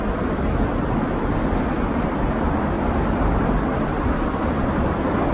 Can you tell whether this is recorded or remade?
recorded